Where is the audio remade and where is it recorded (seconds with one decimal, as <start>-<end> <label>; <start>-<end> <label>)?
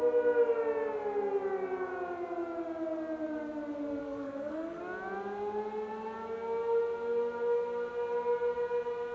0.0-4.0 recorded; 4.0-4.8 remade; 4.8-9.1 recorded